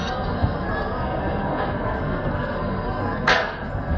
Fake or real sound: fake